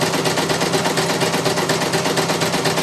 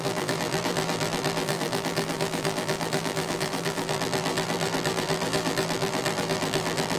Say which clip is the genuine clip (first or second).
first